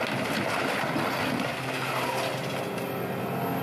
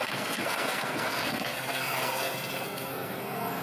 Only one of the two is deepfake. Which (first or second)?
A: second